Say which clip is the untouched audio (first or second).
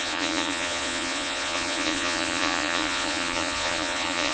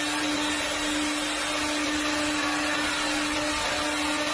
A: second